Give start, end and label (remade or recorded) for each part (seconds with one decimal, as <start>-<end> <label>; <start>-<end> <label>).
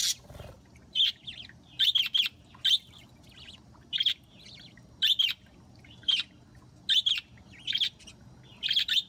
0.0-9.1 recorded